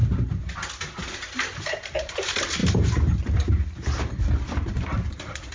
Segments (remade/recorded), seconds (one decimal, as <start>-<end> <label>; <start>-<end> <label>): 0.0-1.6 recorded; 1.6-2.6 remade; 2.6-4.0 recorded; 4.0-5.5 remade